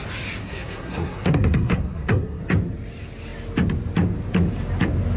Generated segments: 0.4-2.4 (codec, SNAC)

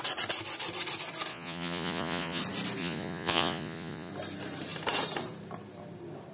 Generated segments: 1.3-2.4 (vocoder, Vocos); 2.8-4.1

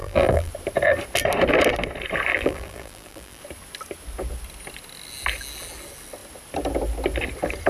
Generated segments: 0.0-0.5 (vocoder, BigVGAN v2); 2.3-3.4

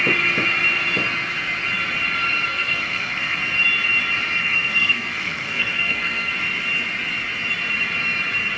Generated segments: 2.5-3.4 (codec, SNAC); 4.4-6.3

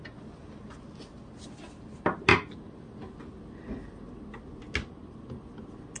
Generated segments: none

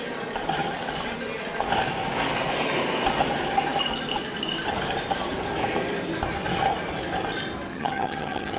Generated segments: 7.7-8.6 (vocoder, HiFi-GAN)